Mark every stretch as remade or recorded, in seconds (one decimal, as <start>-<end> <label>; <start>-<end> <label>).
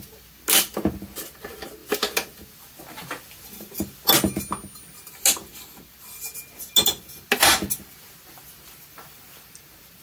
0.0-10.0 recorded